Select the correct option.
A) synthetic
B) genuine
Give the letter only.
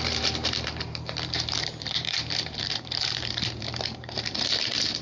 A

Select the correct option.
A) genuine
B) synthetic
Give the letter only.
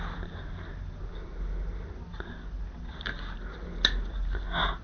A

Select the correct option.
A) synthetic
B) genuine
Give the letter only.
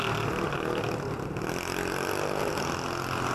B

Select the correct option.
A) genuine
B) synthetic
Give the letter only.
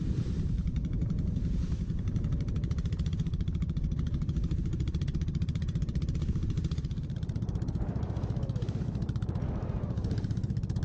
B